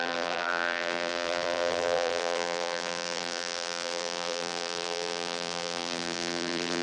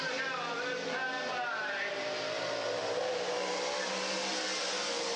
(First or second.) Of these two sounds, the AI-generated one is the first